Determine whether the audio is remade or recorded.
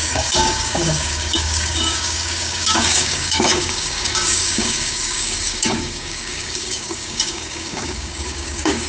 remade